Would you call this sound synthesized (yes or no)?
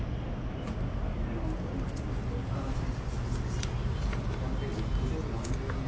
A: no